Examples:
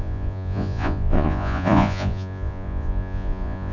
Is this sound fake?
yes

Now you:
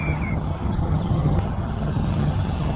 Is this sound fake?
yes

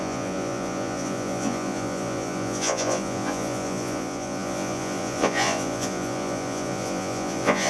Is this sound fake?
yes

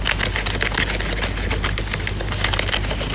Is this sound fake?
no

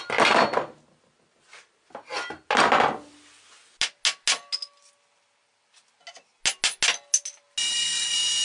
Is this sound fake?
no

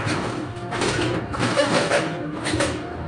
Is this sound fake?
yes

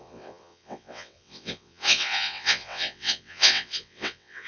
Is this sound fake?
yes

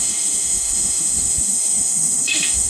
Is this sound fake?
yes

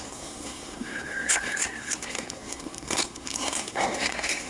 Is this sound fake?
yes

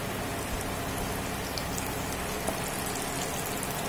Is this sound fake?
no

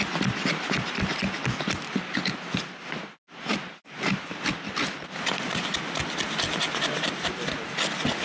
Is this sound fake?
no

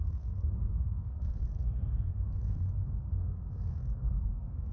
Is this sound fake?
yes